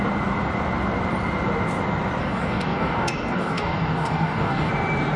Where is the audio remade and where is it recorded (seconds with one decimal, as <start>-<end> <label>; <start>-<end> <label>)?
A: 0.0-2.2 recorded; 2.2-4.7 remade; 4.7-5.2 recorded